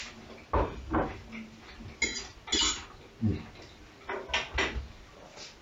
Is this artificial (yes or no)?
no